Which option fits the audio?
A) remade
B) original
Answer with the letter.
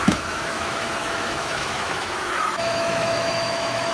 A